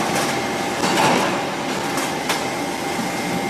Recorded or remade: recorded